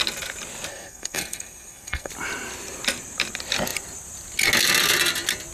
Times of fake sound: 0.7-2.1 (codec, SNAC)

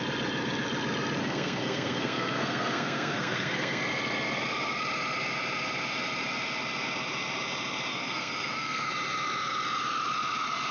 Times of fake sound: 1.2-3.8 (codec, SNAC); 7.9-8.9

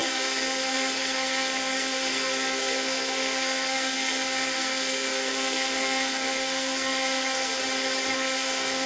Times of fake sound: 0.0-7.6 (codec, SNAC); 8.1-8.9

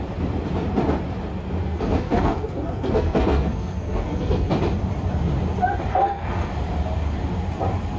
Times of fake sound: 1.6-4.5 (codec, SNAC); 5.9-6.5

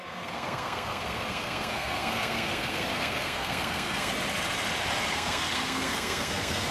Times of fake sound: 0.0-4.1 (codec, SNAC); 5.1-6.7

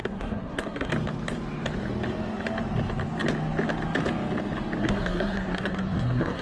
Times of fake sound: 0.0-0.9 (codec, SNAC); 4.8-6.4

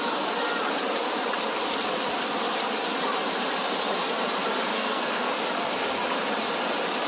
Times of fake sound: 4.7-5.3 (codec, SNAC)

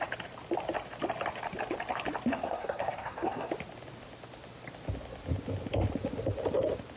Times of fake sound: 2.3-3.5 (codec, SNAC)